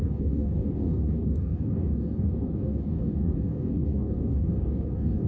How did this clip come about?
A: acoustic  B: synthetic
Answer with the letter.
B